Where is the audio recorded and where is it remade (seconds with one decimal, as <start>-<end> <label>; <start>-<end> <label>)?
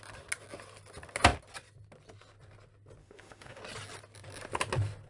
0.0-3.0 recorded; 3.0-3.6 remade; 3.6-5.1 recorded